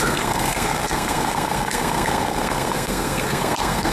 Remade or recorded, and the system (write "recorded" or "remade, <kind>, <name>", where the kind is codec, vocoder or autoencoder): remade, codec, SNAC